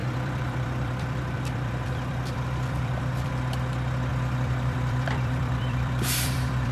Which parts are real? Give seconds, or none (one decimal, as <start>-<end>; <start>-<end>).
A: 3.3-4.1